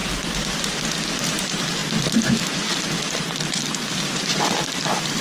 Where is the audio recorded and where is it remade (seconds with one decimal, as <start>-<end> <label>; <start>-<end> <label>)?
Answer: 0.0-1.8 recorded; 1.8-5.2 remade